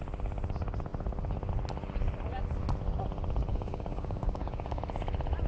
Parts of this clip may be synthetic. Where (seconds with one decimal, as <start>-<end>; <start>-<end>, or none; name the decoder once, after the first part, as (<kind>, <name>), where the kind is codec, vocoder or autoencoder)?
3.5-4.8 (codec, DAC)